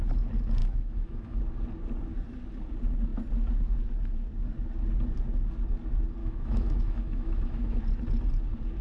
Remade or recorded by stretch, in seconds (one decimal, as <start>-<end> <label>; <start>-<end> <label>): 0.0-0.6 recorded; 0.6-1.4 remade; 1.4-6.2 recorded; 6.2-7.8 remade; 7.8-8.8 recorded